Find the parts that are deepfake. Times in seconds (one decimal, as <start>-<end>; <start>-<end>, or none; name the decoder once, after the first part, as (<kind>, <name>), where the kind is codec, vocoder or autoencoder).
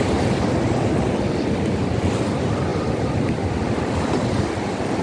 none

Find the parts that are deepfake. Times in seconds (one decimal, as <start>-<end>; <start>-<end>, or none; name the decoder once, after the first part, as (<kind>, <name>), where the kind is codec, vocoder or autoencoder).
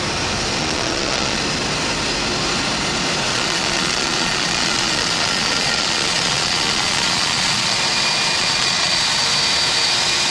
0.6-1.4 (vocoder, Vocos); 3.3-7.8; 8.4-9.0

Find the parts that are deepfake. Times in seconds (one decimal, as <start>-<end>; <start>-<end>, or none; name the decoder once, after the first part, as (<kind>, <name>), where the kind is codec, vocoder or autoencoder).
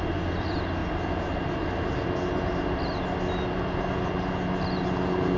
none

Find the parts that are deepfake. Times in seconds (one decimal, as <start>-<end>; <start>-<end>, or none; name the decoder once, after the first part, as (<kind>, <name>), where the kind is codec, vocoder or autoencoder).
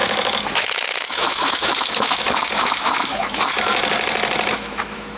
0.0-3.8 (autoencoder, DAC-VAE); 4.5-5.2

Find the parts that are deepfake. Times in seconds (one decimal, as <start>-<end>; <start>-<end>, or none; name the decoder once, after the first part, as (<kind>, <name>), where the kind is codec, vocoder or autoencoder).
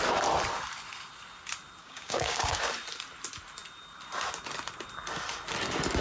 1.8-2.6 (codec, DAC)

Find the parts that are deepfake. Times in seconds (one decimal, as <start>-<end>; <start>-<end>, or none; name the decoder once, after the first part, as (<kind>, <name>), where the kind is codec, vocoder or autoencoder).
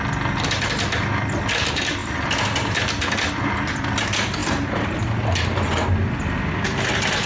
none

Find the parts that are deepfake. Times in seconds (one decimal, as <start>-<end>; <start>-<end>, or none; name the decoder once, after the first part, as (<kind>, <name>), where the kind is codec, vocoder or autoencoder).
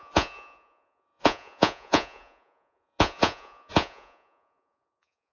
0.0-5.3 (vocoder, Vocos)